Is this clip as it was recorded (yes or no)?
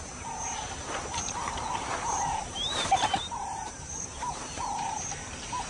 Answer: no